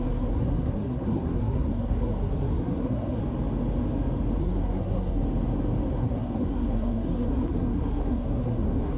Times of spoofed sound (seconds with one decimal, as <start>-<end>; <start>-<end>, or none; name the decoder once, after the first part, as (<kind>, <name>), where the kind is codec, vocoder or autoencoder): 0.0-3.2 (codec, SNAC); 4.4-5.2; 6.0-9.0